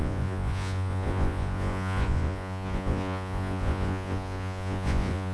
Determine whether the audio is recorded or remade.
remade